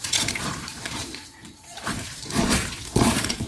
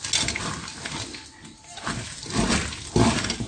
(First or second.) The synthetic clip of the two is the first